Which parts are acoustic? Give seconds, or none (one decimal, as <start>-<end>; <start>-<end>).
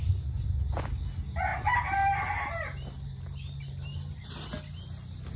0.0-5.4